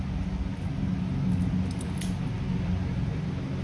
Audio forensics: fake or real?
real